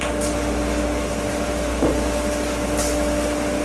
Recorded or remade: recorded